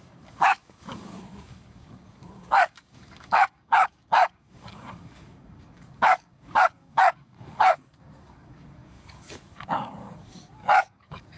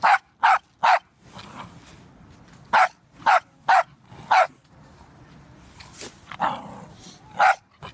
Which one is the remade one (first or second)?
first